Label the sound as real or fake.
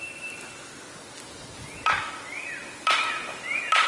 real